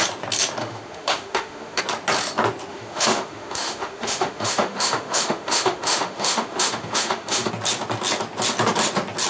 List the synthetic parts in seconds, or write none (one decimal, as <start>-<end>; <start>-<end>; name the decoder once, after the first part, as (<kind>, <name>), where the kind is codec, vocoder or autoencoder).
0.6-1.8 (autoencoder, DAC-VAE); 2.7-7.5